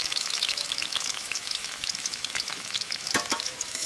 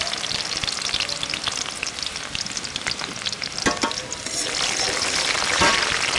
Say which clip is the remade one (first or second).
first